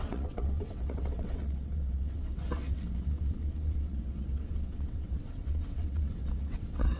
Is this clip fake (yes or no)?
yes